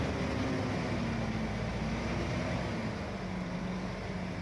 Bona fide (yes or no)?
yes